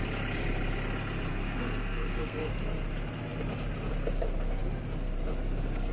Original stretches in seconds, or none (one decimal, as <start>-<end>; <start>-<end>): 0.0-1.3; 2.5-5.9

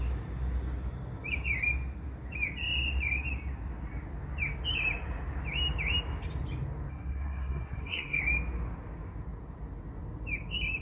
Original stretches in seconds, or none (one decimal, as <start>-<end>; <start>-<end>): 0.0-6.9; 8.2-10.8

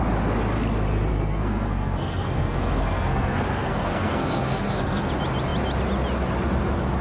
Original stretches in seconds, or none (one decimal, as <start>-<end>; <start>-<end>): 0.0-1.1; 5.1-7.0

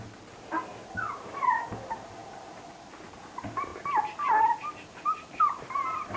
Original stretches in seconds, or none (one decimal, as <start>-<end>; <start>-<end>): 0.0-6.2

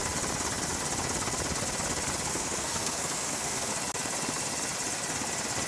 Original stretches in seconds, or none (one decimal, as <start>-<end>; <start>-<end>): 0.0-2.3; 3.7-5.7

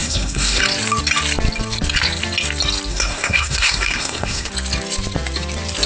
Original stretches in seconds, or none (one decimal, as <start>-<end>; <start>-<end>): 0.6-2.9; 4.5-5.9